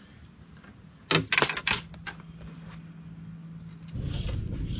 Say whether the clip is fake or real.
real